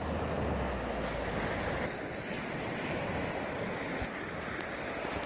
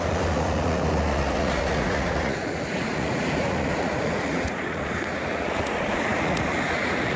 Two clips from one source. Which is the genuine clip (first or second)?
first